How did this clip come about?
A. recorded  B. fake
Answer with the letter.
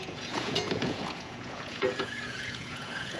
B